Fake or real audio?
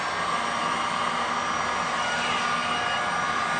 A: real